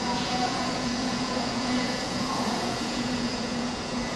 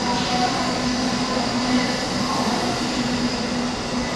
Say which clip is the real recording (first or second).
second